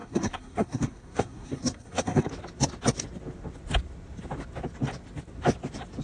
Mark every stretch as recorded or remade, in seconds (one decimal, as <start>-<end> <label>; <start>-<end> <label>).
0.0-2.3 remade; 2.3-6.0 recorded